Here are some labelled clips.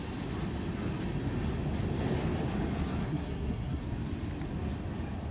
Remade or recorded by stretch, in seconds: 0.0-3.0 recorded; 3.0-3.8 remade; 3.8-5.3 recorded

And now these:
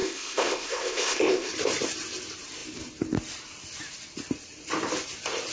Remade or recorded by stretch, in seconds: 0.0-1.5 remade; 1.5-5.5 recorded

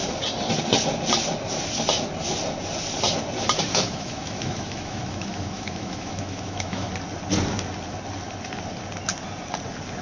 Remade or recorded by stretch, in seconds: 0.0-3.7 recorded; 3.7-6.9 remade; 6.9-10.0 recorded

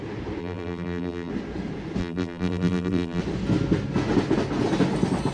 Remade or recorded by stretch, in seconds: 0.0-0.4 recorded; 0.4-1.3 remade; 1.3-2.0 recorded; 2.0-3.2 remade; 3.2-5.3 recorded